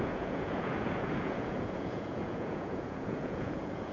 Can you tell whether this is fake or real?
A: fake